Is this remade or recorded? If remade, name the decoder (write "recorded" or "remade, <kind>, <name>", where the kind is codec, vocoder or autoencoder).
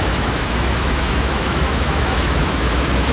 remade, autoencoder, DAC-VAE